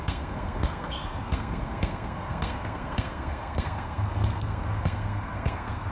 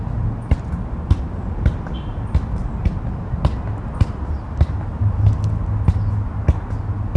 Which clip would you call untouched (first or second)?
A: second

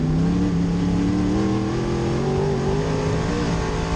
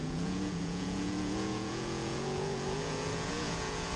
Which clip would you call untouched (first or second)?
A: first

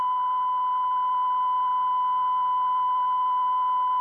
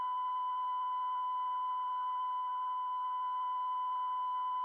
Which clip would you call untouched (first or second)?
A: first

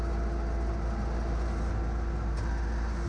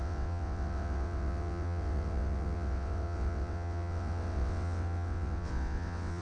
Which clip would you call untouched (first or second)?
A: first